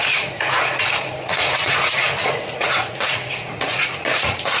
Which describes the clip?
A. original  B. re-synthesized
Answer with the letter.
B